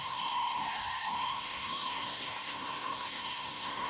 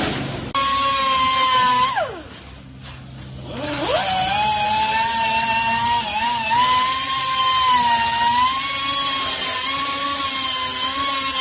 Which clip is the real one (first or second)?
second